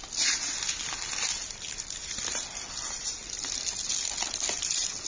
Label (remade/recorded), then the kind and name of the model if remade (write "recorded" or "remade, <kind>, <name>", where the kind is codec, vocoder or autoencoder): recorded